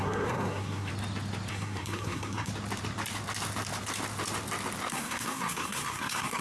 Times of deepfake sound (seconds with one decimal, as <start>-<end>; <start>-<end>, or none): 0.0-0.9; 1.5-2.5; 4.9-6.4